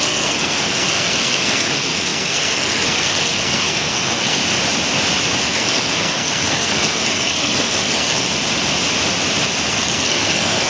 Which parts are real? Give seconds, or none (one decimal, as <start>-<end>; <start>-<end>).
4.4-5.4; 8.3-9.7